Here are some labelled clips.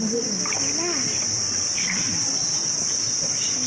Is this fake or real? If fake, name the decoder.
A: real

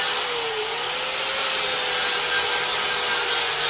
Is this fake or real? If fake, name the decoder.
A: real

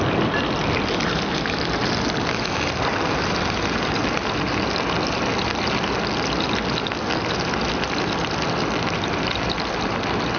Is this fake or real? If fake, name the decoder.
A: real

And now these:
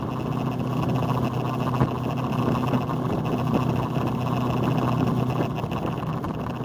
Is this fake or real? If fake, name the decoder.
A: real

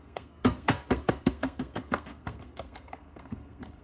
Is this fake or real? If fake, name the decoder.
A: fake, codec, SNAC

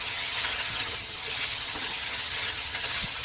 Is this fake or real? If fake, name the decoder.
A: fake, vocoder, HiFi-GAN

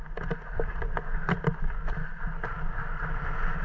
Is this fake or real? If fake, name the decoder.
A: real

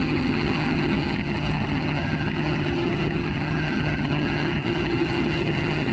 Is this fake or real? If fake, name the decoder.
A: fake, vocoder, HiFi-GAN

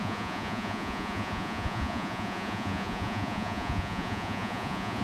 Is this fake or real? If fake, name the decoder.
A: fake, vocoder, Vocos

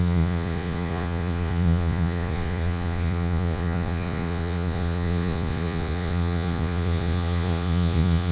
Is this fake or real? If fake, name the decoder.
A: fake, vocoder, Vocos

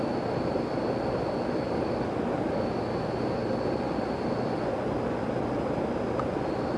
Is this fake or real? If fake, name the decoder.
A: real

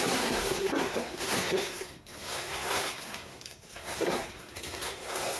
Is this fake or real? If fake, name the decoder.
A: fake, codec, SNAC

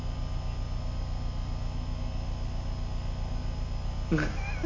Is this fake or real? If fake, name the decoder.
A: real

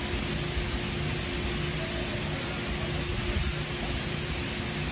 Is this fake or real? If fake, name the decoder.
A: real